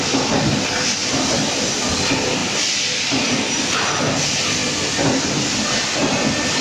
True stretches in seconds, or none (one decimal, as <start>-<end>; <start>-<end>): 0.0-1.0; 1.7-2.4; 4.0-6.6

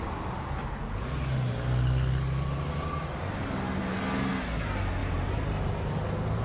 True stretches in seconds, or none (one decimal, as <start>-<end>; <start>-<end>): 0.0-5.0; 5.9-6.4

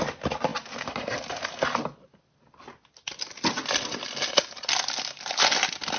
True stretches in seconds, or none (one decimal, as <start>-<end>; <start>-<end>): 0.0-6.0

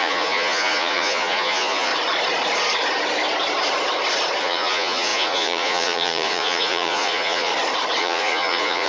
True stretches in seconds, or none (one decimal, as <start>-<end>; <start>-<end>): 1.9-4.4; 7.5-8.0